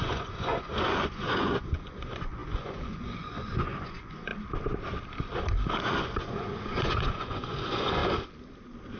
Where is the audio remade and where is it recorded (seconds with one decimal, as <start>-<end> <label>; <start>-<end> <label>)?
0.0-4.3 remade; 4.3-5.8 recorded; 5.8-8.0 remade; 8.0-9.0 recorded